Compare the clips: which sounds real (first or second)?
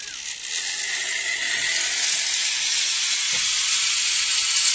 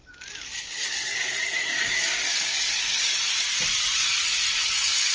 first